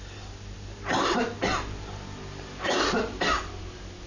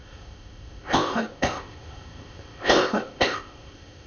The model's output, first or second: second